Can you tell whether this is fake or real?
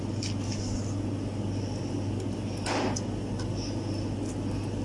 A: real